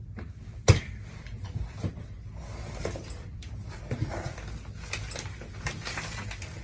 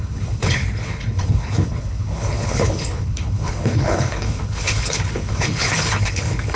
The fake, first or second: second